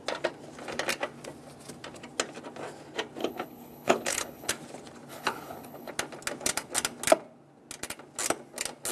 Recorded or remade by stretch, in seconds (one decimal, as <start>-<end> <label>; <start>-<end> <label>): 0.0-3.2 recorded; 3.2-4.5 remade; 4.5-5.1 recorded; 5.1-5.9 remade; 5.9-8.9 recorded

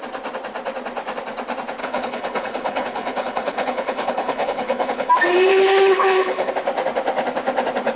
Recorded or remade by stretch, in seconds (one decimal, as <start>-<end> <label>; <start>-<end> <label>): 0.0-1.8 recorded; 1.8-5.1 remade; 5.1-5.5 recorded; 5.5-6.5 remade; 6.5-8.0 recorded